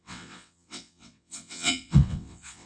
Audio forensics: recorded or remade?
remade